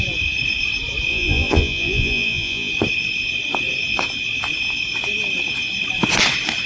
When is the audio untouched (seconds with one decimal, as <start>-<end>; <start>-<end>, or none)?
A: 0.0-1.1; 2.7-6.7